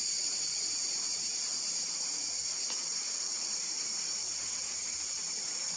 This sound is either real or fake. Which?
fake